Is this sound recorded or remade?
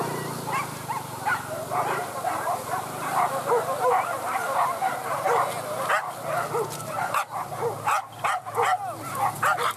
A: recorded